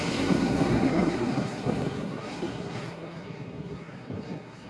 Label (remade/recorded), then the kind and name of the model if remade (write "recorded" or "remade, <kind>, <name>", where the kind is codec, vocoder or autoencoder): remade, codec, SNAC